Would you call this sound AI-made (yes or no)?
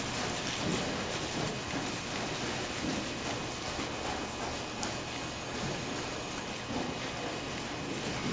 no